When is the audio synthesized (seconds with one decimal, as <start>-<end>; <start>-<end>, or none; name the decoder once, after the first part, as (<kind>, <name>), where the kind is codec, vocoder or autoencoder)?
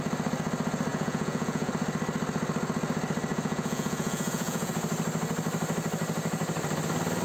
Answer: 0.9-1.7 (vocoder, Vocos); 3.3-4.7